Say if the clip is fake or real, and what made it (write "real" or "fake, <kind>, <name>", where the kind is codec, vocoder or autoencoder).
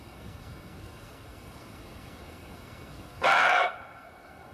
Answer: fake, codec, SNAC